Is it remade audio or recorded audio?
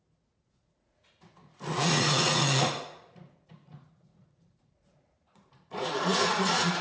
remade